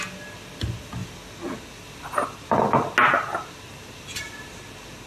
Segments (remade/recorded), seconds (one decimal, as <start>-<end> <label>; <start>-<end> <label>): 0.0-5.1 recorded